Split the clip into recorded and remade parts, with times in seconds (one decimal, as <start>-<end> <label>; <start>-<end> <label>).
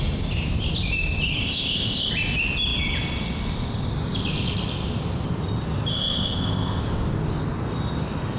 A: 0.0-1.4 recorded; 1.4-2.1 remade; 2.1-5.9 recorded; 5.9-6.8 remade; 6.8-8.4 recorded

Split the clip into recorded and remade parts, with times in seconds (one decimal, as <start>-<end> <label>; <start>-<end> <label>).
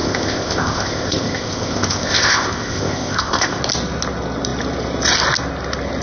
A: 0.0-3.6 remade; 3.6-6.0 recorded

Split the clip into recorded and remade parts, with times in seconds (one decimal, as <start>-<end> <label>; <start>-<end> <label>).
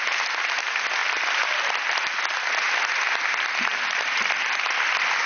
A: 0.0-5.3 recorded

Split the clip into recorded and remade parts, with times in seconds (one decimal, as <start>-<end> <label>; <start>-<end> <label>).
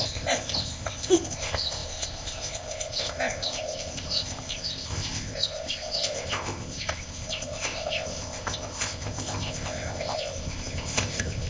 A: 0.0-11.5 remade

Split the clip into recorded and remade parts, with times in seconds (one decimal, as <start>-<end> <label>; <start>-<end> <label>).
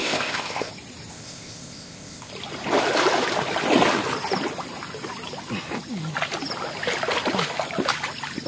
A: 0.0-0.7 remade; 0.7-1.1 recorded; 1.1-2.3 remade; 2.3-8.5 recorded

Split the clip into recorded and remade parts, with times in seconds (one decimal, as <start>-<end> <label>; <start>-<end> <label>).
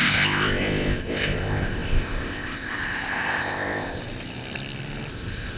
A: 0.0-4.0 remade; 4.0-5.1 recorded; 5.1-5.6 remade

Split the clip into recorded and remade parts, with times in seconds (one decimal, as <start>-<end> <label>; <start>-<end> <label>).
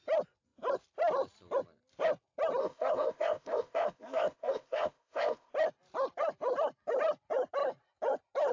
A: 0.0-2.6 recorded; 2.6-5.5 remade; 5.5-8.5 recorded